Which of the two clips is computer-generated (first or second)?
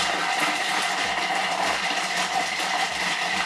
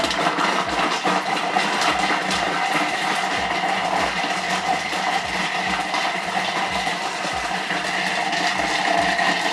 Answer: first